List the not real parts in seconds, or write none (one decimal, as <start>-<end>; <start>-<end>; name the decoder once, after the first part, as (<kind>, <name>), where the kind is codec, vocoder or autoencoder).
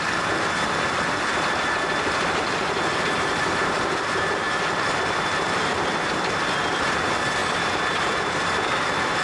none